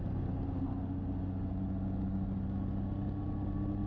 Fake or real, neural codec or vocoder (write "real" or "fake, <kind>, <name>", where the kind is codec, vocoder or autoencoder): real